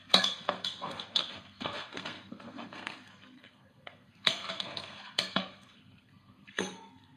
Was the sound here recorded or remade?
remade